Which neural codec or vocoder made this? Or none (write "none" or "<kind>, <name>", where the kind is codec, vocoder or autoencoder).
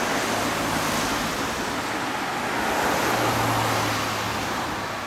none